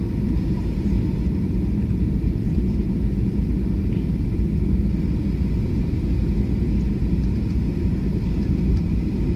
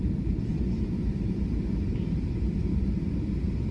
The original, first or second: first